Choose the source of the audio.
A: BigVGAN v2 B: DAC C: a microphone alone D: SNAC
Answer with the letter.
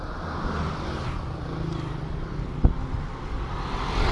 C